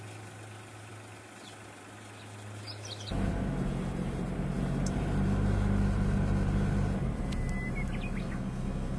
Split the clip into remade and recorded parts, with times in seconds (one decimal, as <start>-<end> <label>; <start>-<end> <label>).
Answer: 0.0-8.2 recorded; 8.2-9.0 remade